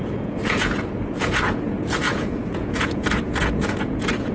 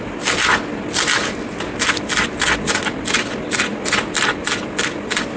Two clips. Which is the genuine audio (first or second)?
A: second